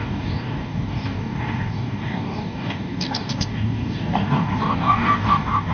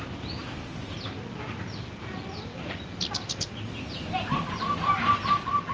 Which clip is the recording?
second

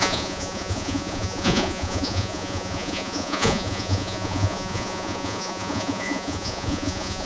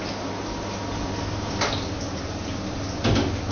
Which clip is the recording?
second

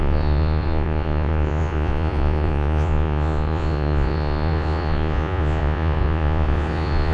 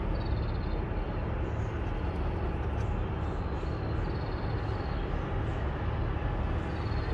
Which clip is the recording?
second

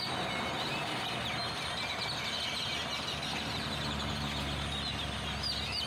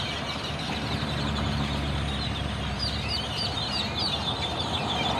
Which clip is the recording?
first